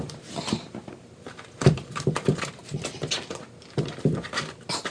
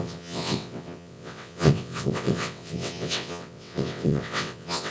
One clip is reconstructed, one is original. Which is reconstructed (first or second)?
second